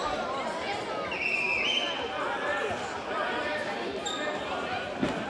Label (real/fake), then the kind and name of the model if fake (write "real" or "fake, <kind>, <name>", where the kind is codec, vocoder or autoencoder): real